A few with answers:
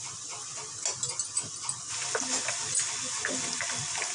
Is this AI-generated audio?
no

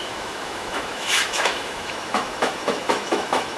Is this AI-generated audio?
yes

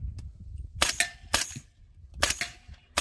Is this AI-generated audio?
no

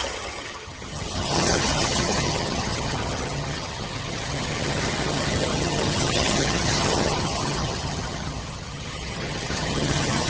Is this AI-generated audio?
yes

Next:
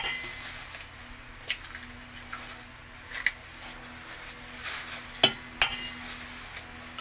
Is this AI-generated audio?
no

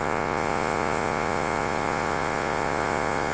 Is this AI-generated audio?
yes